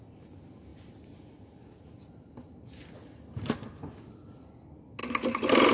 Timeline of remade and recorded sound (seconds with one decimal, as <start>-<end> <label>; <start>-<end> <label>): 0.0-5.7 recorded